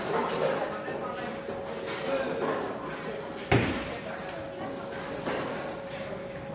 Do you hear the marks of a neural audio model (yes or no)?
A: no